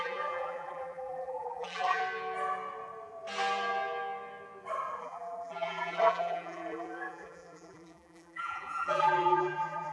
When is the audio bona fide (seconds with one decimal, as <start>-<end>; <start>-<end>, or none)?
2.0-5.0